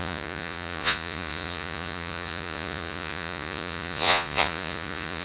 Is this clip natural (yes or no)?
no